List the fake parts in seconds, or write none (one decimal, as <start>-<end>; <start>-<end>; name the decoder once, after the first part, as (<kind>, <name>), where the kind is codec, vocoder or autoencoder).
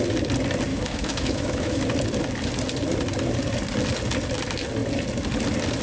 0.7-1.8 (autoencoder, DAC-VAE)